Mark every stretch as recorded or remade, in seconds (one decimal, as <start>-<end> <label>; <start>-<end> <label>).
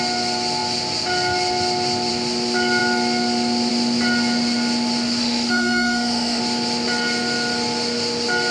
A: 0.0-5.2 recorded; 5.2-6.4 remade; 6.4-8.5 recorded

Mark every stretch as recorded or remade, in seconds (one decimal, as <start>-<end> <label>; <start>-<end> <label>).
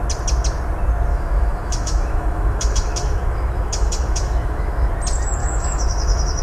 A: 0.0-1.1 recorded; 1.1-4.9 remade; 4.9-5.4 recorded; 5.4-6.4 remade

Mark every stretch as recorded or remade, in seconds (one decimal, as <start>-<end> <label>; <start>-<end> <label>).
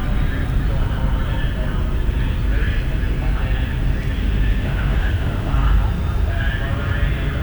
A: 0.0-4.2 recorded; 4.2-5.5 remade; 5.5-7.4 recorded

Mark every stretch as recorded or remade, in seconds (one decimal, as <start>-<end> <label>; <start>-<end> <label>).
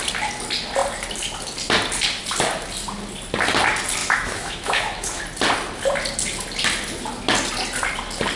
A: 0.0-4.0 recorded; 4.0-5.2 remade; 5.2-8.4 recorded